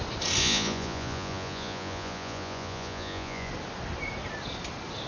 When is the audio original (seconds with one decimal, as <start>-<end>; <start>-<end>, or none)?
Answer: 0.0-0.4; 3.5-5.1